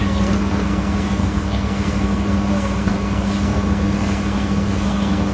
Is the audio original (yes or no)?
no